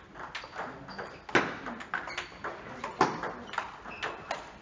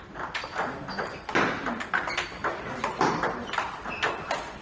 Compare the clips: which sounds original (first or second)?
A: first